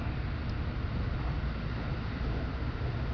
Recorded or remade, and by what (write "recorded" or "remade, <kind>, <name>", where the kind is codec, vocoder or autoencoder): recorded